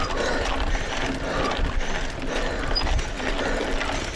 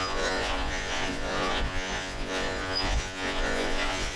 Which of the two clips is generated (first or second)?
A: second